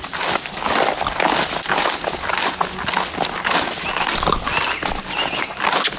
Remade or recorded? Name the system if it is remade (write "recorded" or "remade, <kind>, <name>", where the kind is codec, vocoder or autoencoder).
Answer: recorded